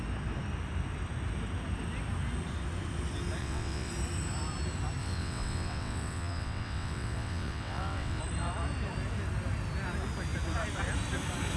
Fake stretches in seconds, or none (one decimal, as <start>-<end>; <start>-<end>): 3.4-3.9; 5.0-8.2